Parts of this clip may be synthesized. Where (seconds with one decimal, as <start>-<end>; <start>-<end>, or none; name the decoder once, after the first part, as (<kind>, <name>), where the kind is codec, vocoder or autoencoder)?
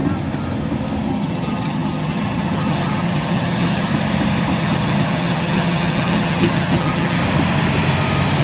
1.1-3.9 (vocoder, HiFi-GAN); 4.6-7.2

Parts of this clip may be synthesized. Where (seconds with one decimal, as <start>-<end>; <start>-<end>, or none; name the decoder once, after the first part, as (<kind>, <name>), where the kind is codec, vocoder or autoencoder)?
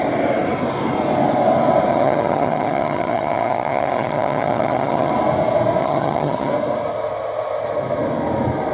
1.9-5.1 (vocoder, HiFi-GAN); 5.8-6.5